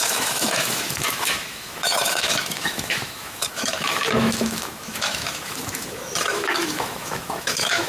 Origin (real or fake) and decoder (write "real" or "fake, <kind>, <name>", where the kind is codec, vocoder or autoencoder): fake, autoencoder, DAC-VAE